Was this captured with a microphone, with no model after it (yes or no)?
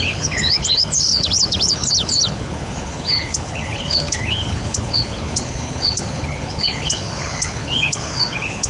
no